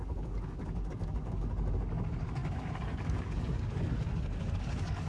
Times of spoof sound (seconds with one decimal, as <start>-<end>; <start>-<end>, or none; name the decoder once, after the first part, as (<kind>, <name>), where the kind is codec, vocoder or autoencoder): 0.0-5.1 (codec, DAC)